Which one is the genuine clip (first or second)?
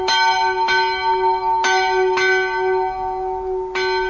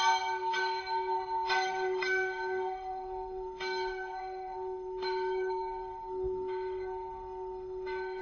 first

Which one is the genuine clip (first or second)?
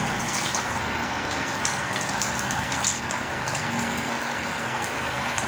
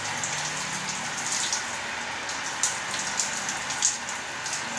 second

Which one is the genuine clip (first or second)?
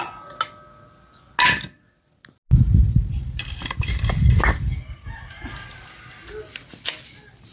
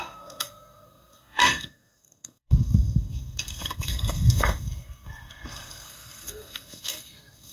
first